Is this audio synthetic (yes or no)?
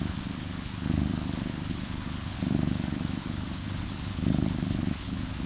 yes